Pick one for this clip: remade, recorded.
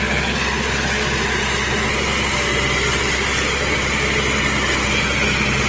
recorded